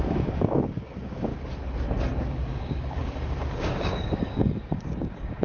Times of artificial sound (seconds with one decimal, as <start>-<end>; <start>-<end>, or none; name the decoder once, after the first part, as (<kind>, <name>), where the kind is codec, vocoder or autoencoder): 0.0-1.3 (codec, DAC); 2.2-5.4

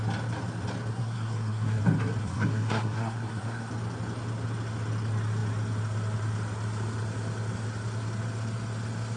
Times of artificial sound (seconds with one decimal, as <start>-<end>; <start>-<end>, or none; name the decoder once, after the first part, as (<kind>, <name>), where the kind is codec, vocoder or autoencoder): 0.9-1.8 (codec, SNAC); 2.2-3.7

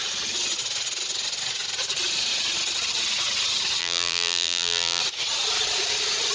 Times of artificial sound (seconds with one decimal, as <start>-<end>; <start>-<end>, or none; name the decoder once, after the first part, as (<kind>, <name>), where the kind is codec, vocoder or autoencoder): 3.8-5.0 (vocoder, BigVGAN v2)

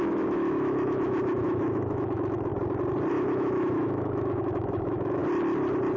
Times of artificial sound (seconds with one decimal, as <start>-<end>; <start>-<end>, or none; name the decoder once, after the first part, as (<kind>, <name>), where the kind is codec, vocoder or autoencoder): 0.0-2.5 (autoencoder, DAC-VAE); 3.1-5.2